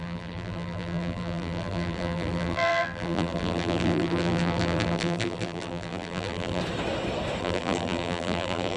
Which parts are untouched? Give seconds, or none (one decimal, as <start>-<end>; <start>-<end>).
6.6-7.4